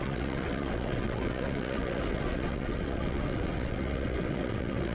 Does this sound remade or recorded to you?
remade